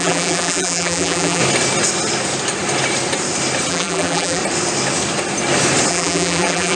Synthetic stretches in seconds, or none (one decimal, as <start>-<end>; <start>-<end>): 0.0-1.4; 3.7-4.4; 5.9-6.8

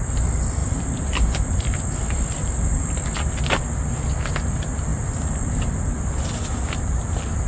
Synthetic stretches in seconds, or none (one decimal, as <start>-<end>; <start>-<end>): 0.6-2.8; 4.9-5.7

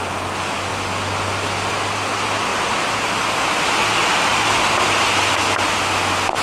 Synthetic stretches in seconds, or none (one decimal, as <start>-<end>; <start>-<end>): none

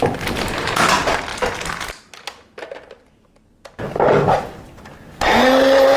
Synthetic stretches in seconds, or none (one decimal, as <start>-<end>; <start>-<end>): none

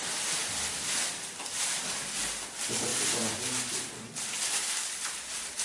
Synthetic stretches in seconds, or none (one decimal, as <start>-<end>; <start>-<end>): 0.0-0.4; 2.5-2.9; 4.1-5.6

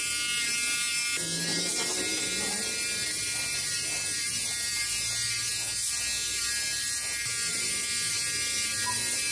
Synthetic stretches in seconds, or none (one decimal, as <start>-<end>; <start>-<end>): 1.5-5.1